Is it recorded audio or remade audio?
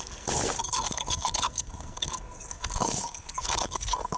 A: remade